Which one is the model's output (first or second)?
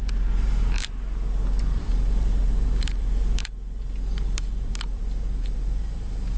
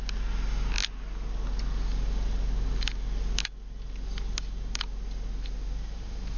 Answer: first